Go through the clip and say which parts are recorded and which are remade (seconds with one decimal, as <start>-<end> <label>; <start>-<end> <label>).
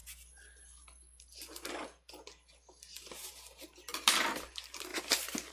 0.0-5.5 recorded